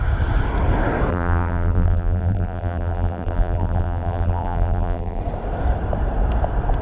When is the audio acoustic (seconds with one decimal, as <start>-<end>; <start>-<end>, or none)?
0.0-1.1; 5.2-6.8